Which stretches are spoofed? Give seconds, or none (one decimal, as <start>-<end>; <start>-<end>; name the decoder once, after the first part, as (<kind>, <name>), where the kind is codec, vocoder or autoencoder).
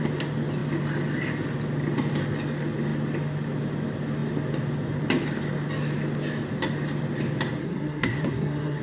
7.6-8.8 (codec, SNAC)